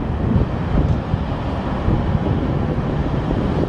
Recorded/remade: recorded